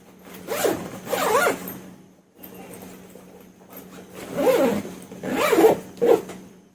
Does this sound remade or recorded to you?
recorded